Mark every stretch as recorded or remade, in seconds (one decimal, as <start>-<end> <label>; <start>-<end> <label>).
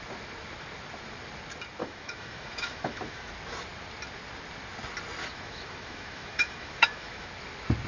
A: 0.0-1.8 recorded; 1.8-3.3 remade; 3.3-5.2 recorded; 5.2-7.3 remade; 7.3-7.9 recorded